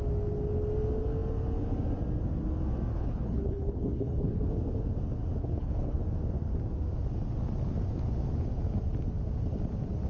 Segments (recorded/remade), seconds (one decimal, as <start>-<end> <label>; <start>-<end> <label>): 0.0-2.9 recorded; 2.9-4.5 remade; 4.5-5.4 recorded; 5.4-6.0 remade; 6.0-10.1 recorded

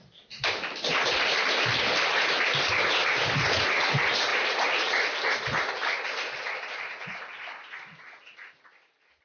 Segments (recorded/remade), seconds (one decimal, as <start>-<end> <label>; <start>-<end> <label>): 0.0-9.2 recorded